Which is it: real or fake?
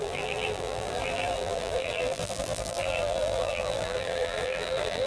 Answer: fake